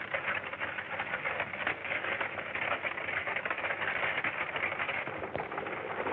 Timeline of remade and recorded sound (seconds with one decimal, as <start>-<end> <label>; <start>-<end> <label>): 0.0-1.8 recorded; 1.8-2.5 remade; 2.5-3.2 recorded; 3.2-3.8 remade; 3.8-6.1 recorded